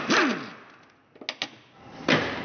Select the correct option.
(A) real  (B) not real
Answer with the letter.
A